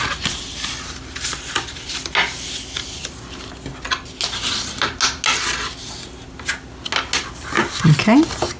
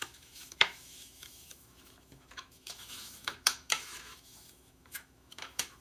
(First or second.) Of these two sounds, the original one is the first